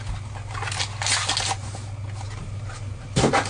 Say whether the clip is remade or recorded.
recorded